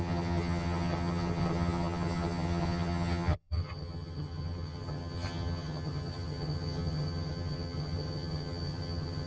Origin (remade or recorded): remade